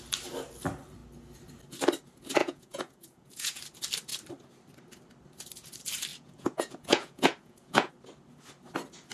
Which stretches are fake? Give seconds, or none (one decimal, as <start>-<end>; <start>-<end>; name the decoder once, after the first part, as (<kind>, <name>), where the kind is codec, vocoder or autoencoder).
2.4-3.6 (vocoder, Vocos); 6.1-7.9